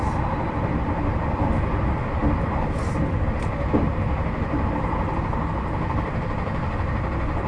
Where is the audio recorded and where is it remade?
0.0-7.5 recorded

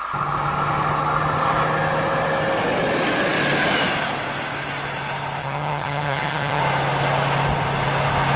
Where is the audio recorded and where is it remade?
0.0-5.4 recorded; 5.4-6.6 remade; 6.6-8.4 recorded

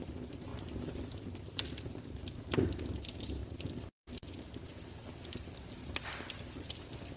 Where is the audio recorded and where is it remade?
0.0-0.5 recorded; 0.5-2.8 remade; 2.8-3.4 recorded; 3.4-4.1 remade; 4.1-7.2 recorded

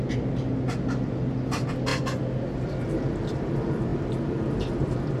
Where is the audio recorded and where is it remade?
0.0-5.2 recorded

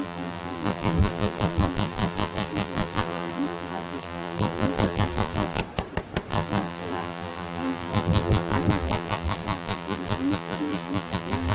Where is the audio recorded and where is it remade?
0.0-5.6 remade; 5.6-6.3 recorded; 6.3-11.5 remade

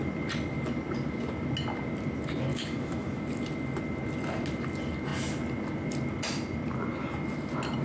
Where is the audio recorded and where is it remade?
0.0-2.5 recorded; 2.5-3.2 remade; 3.2-7.8 recorded

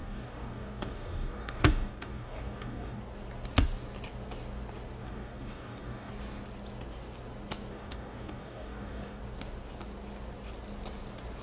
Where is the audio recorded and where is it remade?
0.0-3.0 remade; 3.0-5.0 recorded; 5.0-6.1 remade; 6.1-7.7 recorded; 7.7-9.2 remade; 9.2-11.4 recorded

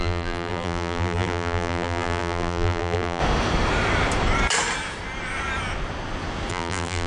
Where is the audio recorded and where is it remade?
0.0-3.2 remade; 3.2-6.5 recorded; 6.5-7.1 remade